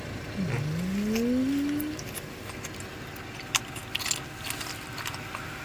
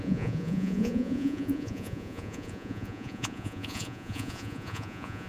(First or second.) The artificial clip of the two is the second